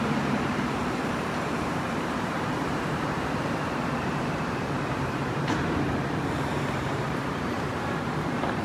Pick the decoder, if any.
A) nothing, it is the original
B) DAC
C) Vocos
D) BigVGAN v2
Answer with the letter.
D